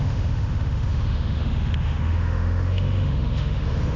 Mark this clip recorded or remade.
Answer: remade